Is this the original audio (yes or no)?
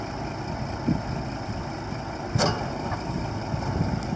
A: yes